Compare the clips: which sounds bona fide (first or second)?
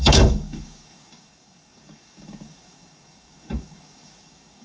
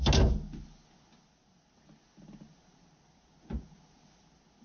second